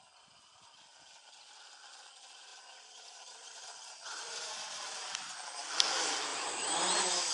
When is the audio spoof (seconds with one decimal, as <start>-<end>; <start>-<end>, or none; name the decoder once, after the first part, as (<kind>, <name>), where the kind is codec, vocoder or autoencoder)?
2.5-5.3 (vocoder, BigVGAN v2); 6.3-7.3